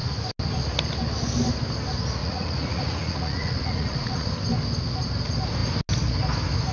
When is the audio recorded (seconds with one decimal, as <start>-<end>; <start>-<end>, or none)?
0.0-2.2; 4.3-6.7